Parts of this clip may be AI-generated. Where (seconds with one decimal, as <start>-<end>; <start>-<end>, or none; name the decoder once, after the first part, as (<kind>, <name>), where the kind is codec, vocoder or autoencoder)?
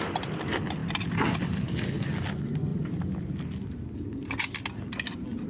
none